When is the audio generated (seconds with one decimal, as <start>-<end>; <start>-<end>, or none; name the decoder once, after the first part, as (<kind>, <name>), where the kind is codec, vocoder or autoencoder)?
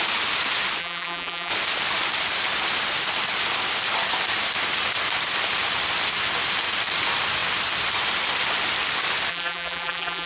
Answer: 0.8-1.5 (vocoder, BigVGAN v2); 9.3-10.3